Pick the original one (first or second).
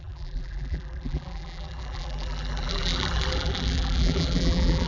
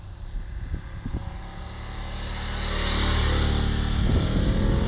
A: second